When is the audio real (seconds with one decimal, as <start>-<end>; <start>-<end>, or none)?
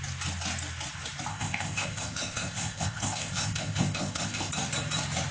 0.0-1.3; 4.5-5.3